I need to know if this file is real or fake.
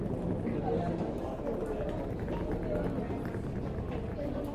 real